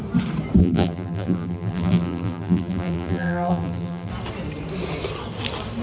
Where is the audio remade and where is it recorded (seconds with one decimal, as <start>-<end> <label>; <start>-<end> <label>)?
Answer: 0.0-0.6 recorded; 0.6-4.1 remade; 4.1-5.8 recorded